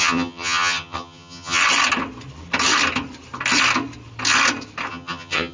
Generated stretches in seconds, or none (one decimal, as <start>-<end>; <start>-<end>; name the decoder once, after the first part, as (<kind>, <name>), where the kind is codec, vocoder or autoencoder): 0.0-1.6 (vocoder, HiFi-GAN); 4.9-5.5